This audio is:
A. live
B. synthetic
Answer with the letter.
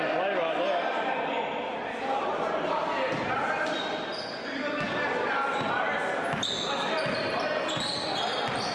B